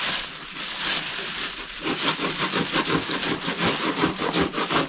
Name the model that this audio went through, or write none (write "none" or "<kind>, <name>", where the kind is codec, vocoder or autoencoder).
none